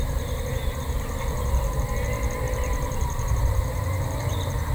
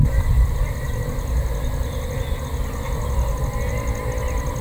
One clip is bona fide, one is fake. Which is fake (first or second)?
first